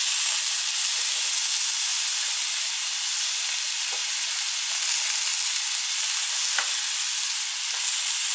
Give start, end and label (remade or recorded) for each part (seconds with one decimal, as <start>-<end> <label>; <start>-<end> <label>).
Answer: 0.0-8.3 recorded